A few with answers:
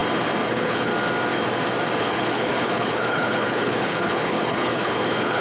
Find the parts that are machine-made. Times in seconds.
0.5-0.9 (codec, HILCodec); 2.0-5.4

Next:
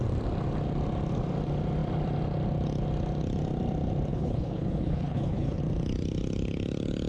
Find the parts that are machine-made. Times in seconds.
4.1-5.6 (codec, HILCodec)

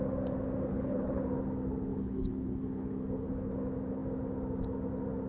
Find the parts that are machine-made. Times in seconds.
0.7-1.2 (codec, HILCodec); 1.9-3.5

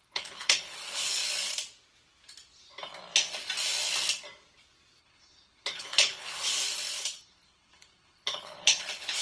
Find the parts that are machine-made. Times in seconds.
0.0-1.2 (codec, HILCodec); 5.0-6.5; 7.2-9.2

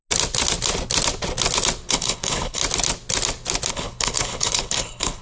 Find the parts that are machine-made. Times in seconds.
1.9-2.6 (codec, HILCodec); 3.7-5.2